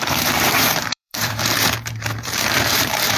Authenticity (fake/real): fake